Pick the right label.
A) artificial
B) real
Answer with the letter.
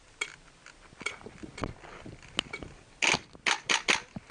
B